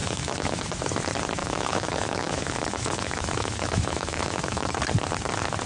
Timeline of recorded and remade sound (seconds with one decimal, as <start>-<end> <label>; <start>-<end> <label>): 0.0-0.6 remade; 0.6-1.4 recorded; 1.4-4.8 remade; 4.8-5.7 recorded